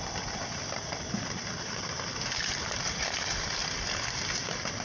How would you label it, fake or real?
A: real